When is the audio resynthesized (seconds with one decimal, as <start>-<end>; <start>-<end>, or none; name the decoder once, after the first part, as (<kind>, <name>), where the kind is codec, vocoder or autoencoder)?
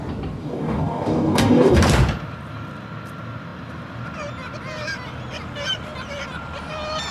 0.4-1.8 (codec, DAC)